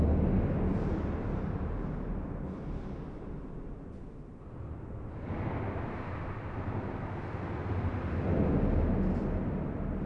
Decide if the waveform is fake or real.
real